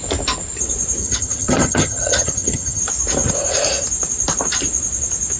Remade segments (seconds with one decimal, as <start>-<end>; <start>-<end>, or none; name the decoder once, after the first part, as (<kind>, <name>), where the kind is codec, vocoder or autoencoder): 1.0-2.8 (vocoder, HiFi-GAN)